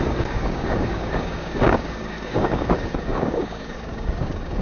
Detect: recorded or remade remade